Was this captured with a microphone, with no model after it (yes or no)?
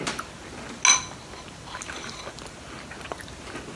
yes